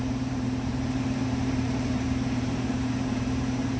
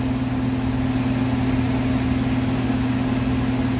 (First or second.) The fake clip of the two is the first